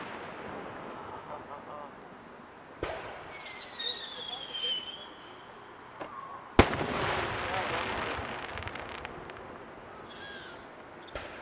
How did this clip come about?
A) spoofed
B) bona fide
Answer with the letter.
B